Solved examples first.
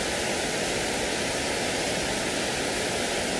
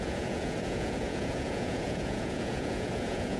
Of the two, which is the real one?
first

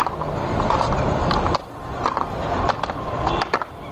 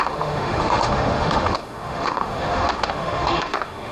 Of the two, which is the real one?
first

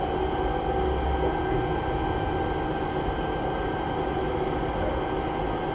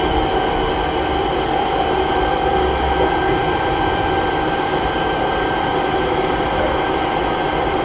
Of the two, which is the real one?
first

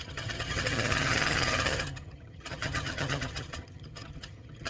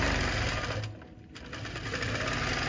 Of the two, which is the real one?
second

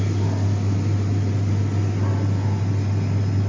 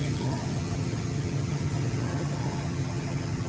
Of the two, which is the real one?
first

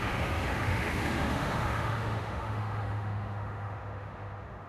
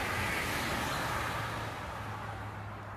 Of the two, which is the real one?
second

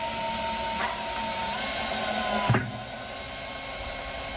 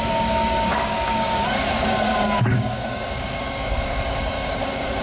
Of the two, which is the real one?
first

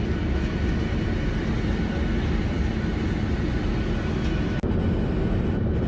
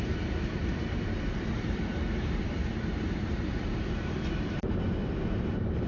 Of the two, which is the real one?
first